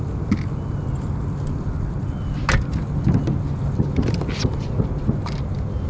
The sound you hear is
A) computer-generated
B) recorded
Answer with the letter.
B